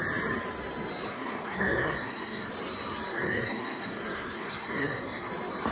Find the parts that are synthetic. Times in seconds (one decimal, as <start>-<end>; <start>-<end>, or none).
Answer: 1.1-2.5; 3.1-5.3